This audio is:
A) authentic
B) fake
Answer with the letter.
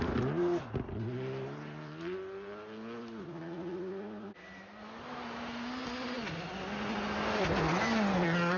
A